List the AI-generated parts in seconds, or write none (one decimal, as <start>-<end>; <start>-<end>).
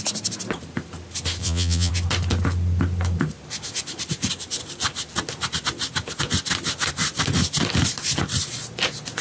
1.4-1.9